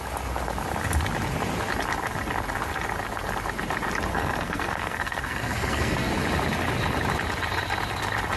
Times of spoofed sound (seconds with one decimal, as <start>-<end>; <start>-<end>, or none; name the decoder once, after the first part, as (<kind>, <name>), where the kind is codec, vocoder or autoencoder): 4.1-6.1 (codec, SNAC)